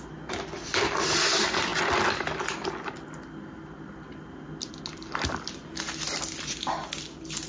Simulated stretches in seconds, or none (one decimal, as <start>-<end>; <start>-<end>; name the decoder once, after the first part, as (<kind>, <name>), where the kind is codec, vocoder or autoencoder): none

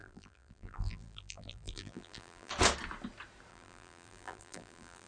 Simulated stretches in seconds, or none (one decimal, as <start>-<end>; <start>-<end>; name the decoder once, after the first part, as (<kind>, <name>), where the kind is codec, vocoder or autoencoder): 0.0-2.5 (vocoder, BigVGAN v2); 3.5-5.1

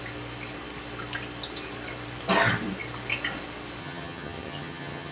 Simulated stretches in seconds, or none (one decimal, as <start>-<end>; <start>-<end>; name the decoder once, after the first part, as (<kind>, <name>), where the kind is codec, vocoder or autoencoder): 3.8-5.1 (vocoder, HiFi-GAN)